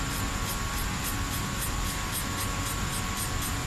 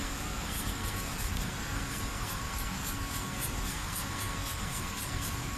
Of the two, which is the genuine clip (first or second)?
first